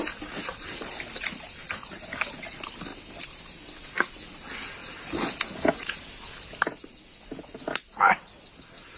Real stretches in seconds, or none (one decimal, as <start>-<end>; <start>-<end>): 0.0-9.0